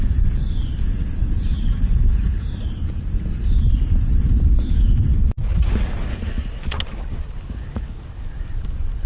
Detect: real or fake real